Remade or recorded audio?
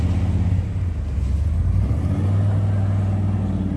recorded